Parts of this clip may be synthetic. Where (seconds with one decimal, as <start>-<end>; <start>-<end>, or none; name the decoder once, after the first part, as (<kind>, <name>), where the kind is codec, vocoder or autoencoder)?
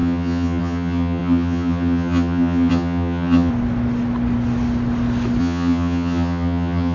0.0-3.5 (vocoder, HiFi-GAN); 5.4-6.9